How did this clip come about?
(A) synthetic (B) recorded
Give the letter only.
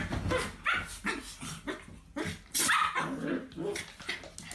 B